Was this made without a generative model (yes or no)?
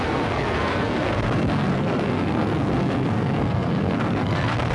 no